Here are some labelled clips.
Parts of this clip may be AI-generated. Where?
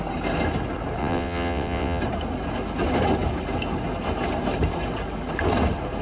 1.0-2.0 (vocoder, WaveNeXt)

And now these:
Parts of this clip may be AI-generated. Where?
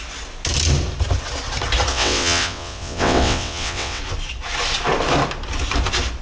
1.9-4.0 (vocoder, WaveNeXt)